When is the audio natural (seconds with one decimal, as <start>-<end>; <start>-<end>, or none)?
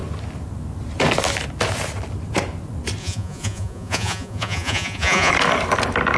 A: 0.0-3.0; 5.3-6.2